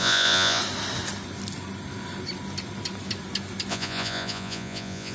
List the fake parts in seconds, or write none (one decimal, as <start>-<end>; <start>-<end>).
0.0-0.6; 3.7-5.1